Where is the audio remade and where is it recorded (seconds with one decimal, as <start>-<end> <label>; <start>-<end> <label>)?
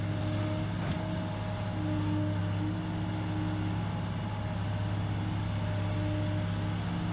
0.0-7.1 recorded